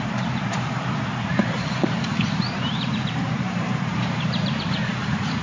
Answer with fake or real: fake